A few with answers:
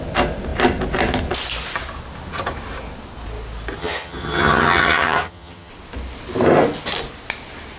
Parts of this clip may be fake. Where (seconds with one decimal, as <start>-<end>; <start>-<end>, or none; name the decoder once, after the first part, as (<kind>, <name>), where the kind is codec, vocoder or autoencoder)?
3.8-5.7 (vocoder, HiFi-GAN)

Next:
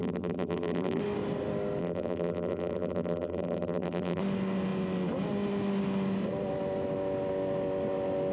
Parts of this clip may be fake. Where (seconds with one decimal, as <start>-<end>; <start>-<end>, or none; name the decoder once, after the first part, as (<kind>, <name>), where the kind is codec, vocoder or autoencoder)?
0.0-1.0 (vocoder, BigVGAN v2); 1.8-4.2

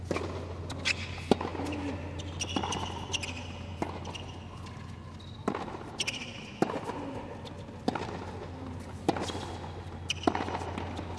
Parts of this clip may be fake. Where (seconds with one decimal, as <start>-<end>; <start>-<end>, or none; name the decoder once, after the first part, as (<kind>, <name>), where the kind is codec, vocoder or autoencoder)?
none

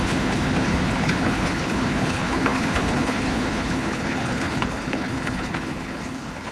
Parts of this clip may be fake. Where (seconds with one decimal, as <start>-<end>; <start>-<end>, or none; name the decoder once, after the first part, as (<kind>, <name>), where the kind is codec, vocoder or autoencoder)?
0.0-6.5 (codec, HILCodec)